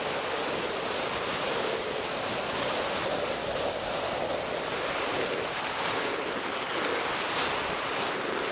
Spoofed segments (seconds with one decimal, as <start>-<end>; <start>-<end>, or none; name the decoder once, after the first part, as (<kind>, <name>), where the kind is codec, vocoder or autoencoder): 3.4-3.9 (codec, DAC)